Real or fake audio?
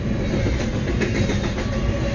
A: real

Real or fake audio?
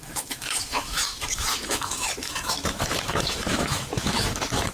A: fake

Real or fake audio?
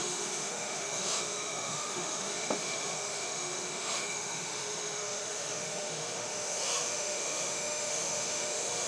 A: fake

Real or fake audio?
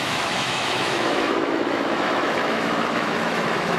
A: fake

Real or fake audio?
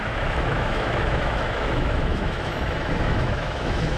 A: fake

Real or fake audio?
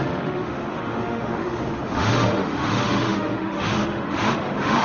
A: fake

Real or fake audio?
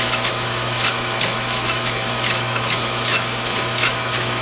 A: fake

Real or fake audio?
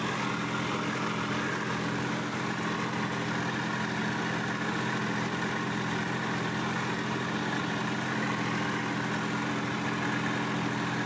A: real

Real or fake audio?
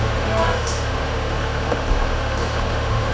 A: fake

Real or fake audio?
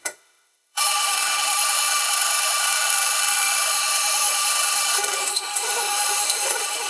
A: fake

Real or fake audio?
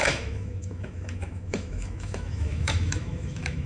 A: fake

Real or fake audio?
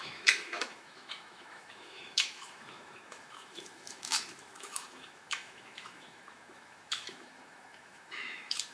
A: fake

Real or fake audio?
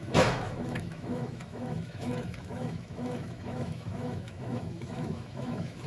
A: fake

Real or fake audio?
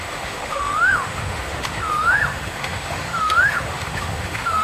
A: fake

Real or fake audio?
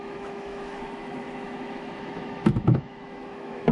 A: fake